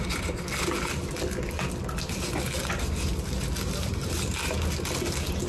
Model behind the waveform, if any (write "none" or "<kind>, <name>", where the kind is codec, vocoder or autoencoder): none